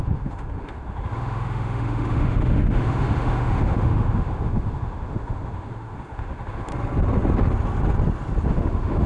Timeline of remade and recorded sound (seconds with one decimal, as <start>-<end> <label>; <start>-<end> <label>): 0.0-6.7 remade; 6.7-8.5 recorded; 8.5-9.1 remade